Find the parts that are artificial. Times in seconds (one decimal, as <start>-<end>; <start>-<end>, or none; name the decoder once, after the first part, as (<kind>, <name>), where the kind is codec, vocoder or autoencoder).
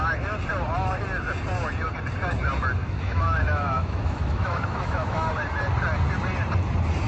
2.8-5.3 (autoencoder, DAC-VAE)